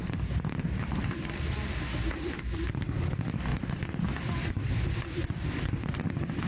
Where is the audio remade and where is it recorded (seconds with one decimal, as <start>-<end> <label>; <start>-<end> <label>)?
0.0-3.5 remade; 3.5-4.0 recorded; 4.0-6.5 remade